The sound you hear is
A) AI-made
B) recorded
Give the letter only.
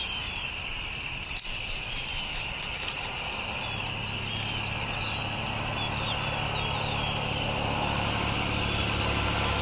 B